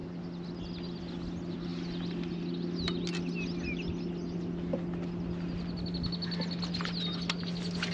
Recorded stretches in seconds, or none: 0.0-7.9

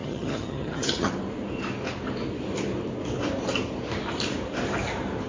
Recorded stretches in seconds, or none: 1.1-5.3

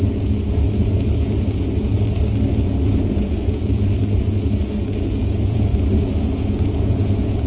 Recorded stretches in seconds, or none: 1.9-2.5

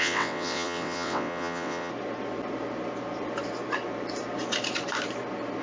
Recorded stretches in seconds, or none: 1.9-5.6

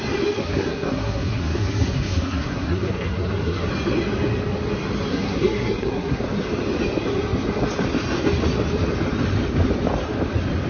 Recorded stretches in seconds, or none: 0.0-0.4; 3.7-5.1; 6.2-10.7